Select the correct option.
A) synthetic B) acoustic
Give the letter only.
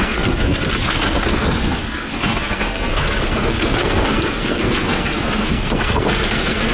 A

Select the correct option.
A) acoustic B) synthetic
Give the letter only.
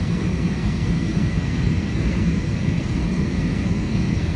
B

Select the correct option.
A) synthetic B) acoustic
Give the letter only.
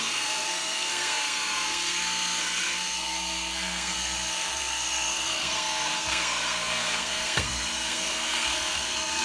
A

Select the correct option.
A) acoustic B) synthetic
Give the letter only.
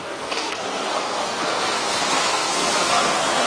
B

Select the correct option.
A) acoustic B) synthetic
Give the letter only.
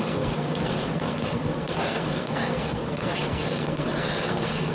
B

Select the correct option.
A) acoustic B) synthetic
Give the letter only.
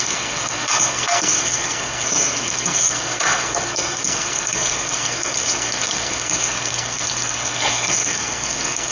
B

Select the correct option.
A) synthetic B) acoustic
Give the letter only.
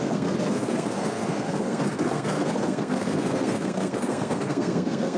A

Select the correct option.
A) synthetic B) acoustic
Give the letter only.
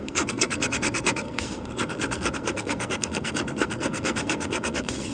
A